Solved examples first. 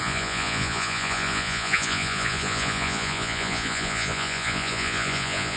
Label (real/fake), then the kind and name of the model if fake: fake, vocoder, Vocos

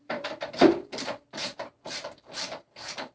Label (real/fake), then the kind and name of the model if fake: fake, vocoder, BigVGAN v2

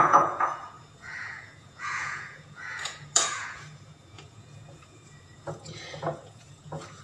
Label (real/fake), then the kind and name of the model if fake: fake, vocoder, Vocos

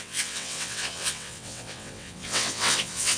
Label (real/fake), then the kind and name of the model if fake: fake, vocoder, WaveNeXt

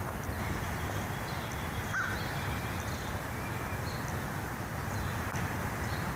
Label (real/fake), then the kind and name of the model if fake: real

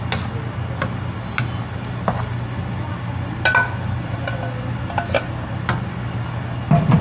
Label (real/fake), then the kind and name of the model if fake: real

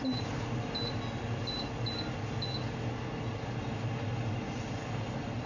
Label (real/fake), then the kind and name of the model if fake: real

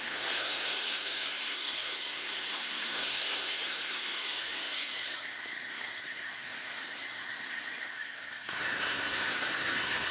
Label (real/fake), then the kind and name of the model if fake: fake, codec, SNAC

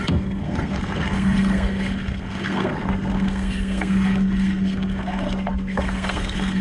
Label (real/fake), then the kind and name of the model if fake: fake, codec, SNAC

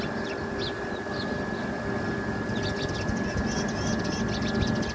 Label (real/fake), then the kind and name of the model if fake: real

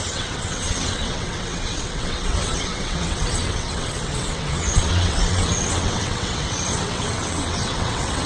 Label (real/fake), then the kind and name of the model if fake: fake, vocoder, WaveNeXt